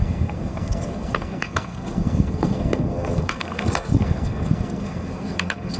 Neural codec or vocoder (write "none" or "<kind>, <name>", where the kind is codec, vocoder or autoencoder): codec, SNAC